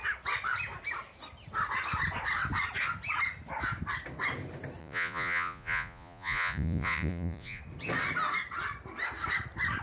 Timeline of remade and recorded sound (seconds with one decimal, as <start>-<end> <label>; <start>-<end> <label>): 0.0-4.8 recorded; 4.8-7.6 remade; 7.6-9.8 recorded